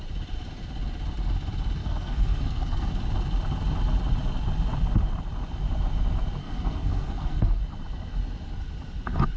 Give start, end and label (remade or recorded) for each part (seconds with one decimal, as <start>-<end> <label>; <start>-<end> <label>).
0.0-1.8 recorded; 1.8-2.9 remade; 2.9-6.4 recorded; 6.4-7.6 remade; 7.6-9.4 recorded